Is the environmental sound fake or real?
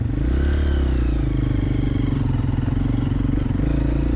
real